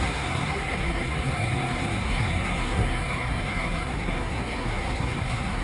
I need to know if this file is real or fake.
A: fake